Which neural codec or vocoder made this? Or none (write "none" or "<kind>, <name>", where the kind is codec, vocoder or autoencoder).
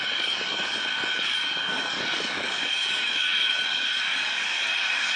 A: codec, DAC